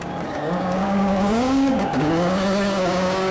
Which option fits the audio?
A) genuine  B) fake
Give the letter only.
B